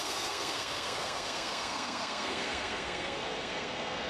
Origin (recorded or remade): remade